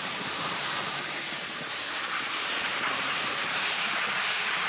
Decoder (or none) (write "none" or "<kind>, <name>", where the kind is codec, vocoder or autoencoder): vocoder, BigVGAN v2